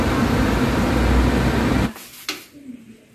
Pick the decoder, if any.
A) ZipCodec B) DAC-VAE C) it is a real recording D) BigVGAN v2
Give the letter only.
C